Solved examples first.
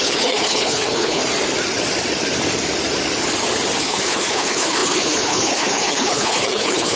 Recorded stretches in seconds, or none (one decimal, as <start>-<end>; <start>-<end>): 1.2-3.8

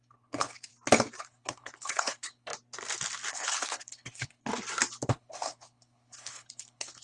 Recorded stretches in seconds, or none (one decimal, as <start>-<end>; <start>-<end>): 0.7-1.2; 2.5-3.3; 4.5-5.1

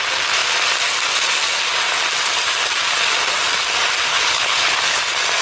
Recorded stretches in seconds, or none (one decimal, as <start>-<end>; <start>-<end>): 0.0-4.1; 5.0-5.4

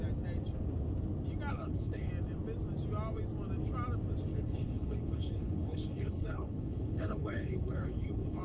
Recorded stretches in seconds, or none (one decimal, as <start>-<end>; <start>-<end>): 0.0-1.5; 2.1-4.3

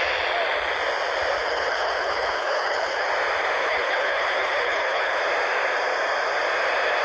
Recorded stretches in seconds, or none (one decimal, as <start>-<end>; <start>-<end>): 0.0-1.4; 3.1-3.6; 5.2-7.0